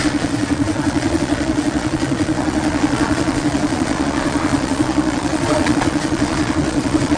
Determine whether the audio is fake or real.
fake